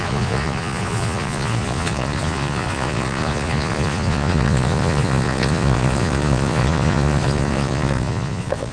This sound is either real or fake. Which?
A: fake